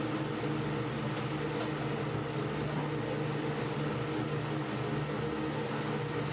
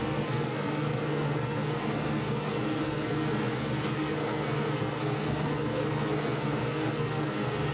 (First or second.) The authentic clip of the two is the first